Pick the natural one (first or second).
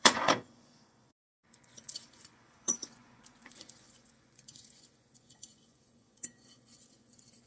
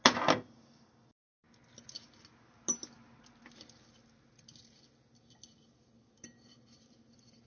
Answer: second